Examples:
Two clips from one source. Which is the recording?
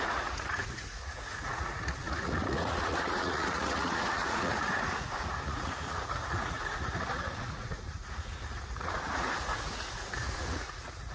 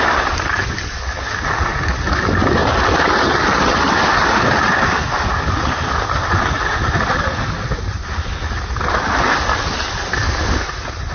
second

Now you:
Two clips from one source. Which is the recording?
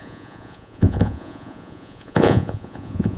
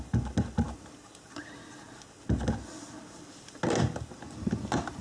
second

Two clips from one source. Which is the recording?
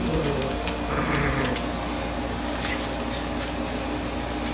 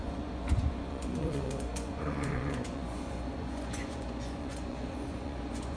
first